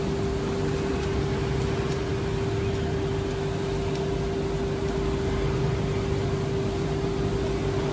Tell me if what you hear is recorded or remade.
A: recorded